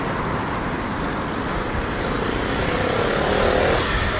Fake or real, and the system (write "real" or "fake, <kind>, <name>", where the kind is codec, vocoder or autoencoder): real